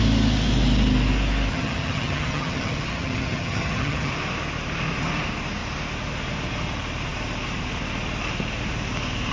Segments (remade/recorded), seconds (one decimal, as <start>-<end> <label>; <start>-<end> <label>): 0.0-1.5 recorded; 1.5-4.1 remade; 4.1-9.3 recorded